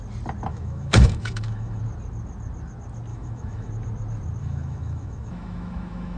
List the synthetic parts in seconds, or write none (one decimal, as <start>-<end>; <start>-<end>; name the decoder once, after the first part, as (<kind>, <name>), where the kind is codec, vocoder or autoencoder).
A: 0.5-1.8 (autoencoder, DAC-VAE); 3.1-3.7; 4.4-6.2